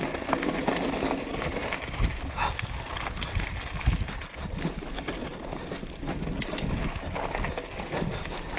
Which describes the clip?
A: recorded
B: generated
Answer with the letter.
A